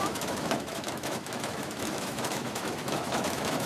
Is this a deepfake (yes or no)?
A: yes